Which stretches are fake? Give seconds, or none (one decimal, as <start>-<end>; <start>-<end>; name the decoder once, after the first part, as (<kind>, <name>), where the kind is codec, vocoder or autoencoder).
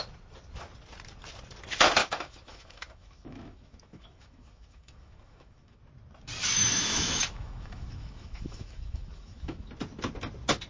2.0-5.8 (autoencoder, DAC-VAE); 6.4-9.7